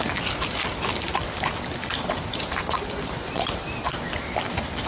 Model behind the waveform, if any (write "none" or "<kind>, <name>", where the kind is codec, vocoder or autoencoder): none